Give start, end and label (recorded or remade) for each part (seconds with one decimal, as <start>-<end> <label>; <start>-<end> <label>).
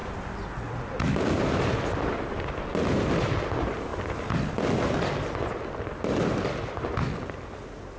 0.0-8.0 recorded